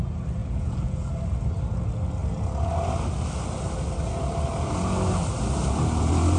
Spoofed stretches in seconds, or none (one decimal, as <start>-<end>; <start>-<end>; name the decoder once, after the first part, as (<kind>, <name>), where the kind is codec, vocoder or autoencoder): 0.4-1.1 (vocoder, Vocos)